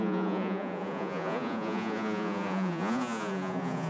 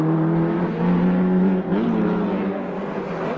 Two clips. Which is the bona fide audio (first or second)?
second